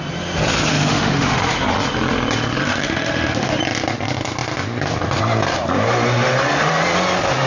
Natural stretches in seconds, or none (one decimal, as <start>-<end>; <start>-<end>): 0.0-0.7; 1.4-2.6; 3.6-7.5